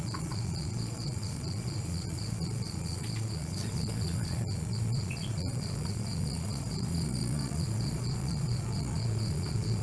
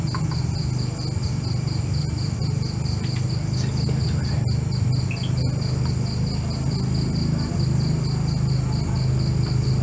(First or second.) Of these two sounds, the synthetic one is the first